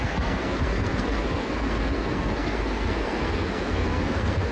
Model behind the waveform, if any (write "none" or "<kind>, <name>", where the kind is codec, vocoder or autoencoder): codec, SNAC